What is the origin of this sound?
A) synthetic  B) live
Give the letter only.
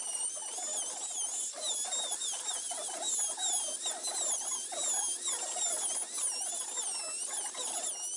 B